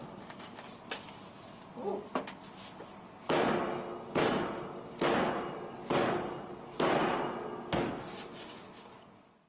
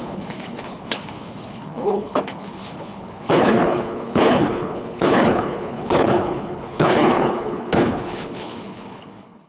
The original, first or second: first